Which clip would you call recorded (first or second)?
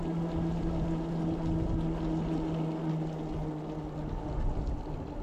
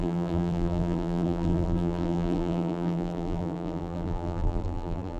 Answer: first